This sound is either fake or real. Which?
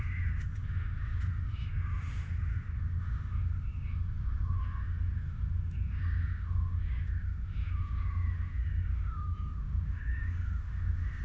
fake